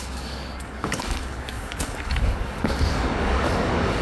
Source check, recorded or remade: remade